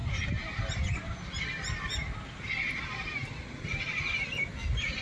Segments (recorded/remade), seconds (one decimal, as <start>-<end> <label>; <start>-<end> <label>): 0.0-5.0 recorded